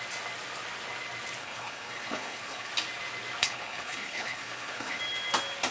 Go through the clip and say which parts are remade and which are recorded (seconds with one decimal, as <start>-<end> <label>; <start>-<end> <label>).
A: 0.0-1.4 recorded; 1.4-2.7 remade; 2.7-3.4 recorded; 3.4-5.0 remade; 5.0-5.7 recorded

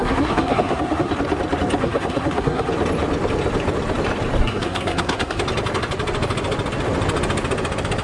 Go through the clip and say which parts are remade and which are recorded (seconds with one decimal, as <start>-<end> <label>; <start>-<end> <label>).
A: 0.0-1.1 remade; 1.1-1.8 recorded; 1.8-2.7 remade; 2.7-4.4 recorded; 4.4-5.4 remade; 5.4-8.0 recorded

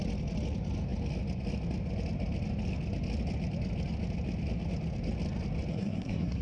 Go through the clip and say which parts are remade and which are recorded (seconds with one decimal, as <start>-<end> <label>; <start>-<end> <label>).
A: 0.0-5.7 recorded; 5.7-6.4 remade

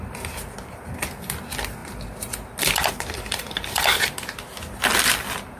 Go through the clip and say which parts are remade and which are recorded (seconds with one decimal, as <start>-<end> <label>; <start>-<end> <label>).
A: 0.0-5.6 recorded